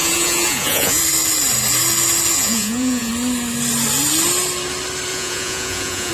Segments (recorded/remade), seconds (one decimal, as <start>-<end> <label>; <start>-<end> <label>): 0.0-1.0 remade; 1.0-2.3 recorded; 2.3-3.1 remade; 3.1-5.1 recorded; 5.1-6.1 remade